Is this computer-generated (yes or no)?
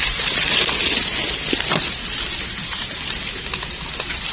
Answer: no